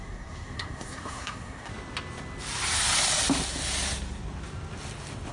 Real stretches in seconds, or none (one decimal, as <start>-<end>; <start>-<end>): 1.7-5.3